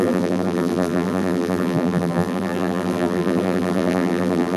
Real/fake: fake